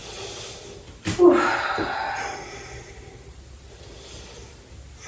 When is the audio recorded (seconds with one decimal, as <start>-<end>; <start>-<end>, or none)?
0.0-5.1